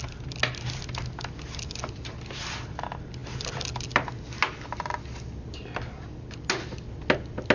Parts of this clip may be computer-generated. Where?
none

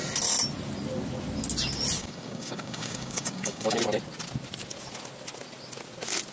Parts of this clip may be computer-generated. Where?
2.0-3.8 (codec, DAC)

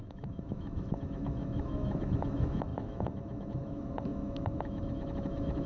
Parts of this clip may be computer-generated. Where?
0.0-5.7 (autoencoder, DAC-VAE)

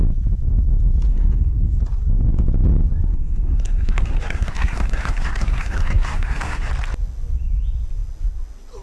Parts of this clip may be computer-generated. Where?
1.1-1.8 (codec, SNAC); 3.1-6.7

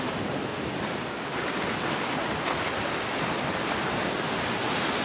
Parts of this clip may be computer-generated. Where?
0.0-0.5 (vocoder, BigVGAN v2); 3.5-5.0

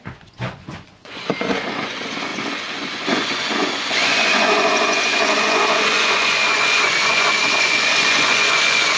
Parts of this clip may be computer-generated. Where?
0.0-9.0 (vocoder, Vocos)

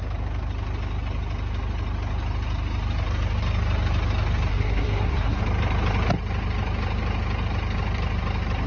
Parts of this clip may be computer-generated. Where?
4.5-5.4 (codec, SNAC)